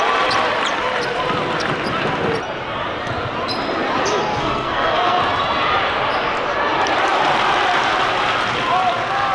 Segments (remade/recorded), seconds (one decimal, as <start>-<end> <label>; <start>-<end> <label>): 0.0-4.3 recorded; 4.3-5.2 remade; 5.2-9.3 recorded